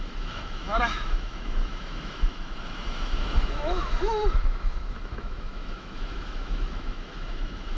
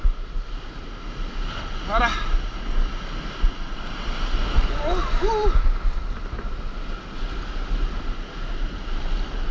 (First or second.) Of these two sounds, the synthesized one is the first